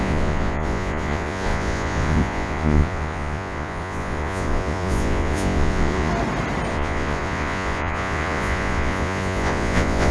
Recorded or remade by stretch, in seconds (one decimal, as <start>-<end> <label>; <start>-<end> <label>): 0.0-6.1 remade; 6.1-6.7 recorded; 6.7-10.1 remade